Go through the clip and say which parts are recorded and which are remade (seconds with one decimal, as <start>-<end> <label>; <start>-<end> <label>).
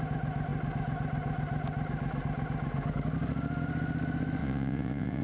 0.0-4.4 recorded; 4.4-5.2 remade